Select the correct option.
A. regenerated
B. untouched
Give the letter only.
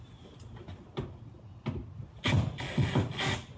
B